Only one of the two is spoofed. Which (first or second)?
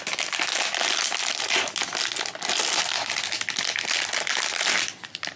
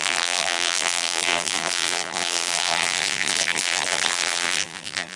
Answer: second